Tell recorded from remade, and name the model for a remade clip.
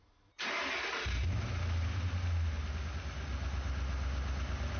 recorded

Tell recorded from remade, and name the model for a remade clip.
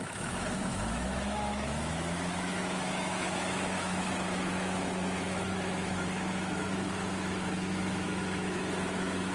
remade, autoencoder, DAC-VAE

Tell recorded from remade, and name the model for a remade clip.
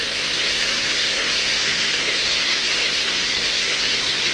remade, codec, SNAC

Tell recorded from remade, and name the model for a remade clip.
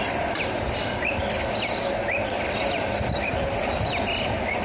recorded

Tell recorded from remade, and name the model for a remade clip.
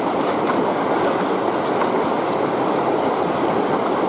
recorded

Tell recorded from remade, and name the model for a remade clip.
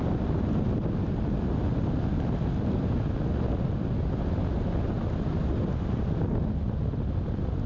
recorded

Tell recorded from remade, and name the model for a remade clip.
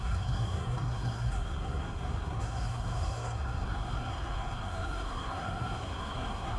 remade, codec, SNAC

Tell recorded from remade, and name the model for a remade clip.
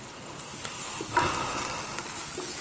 recorded